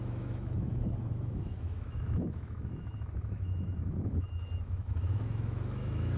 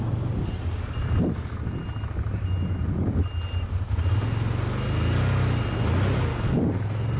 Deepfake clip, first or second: first